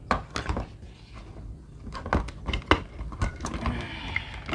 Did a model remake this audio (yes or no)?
no